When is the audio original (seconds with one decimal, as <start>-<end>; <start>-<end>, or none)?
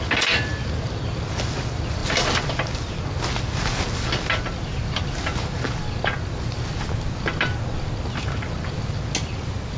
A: 0.0-9.8